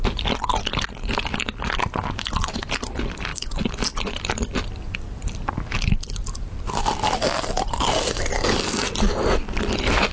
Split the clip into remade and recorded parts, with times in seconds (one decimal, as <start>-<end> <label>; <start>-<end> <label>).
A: 0.0-10.1 recorded